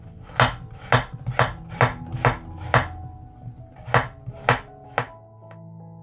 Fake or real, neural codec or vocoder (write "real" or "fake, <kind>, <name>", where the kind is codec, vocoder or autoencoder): real